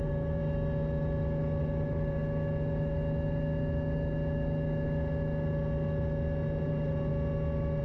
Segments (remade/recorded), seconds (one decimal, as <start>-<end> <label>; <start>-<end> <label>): 0.0-0.4 remade; 0.4-1.6 recorded; 1.6-2.2 remade; 2.2-6.6 recorded; 6.6-7.1 remade; 7.1-7.8 recorded